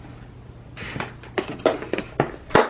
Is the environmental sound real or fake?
real